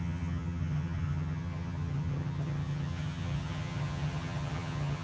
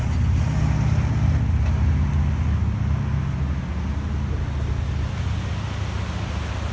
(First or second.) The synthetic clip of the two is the first